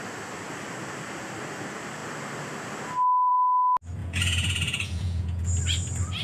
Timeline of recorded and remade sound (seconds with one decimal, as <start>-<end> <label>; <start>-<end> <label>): 0.0-4.0 recorded; 4.0-5.5 remade; 5.5-6.2 recorded